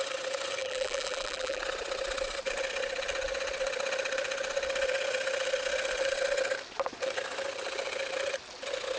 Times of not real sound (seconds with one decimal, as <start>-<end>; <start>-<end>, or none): 0.6-1.6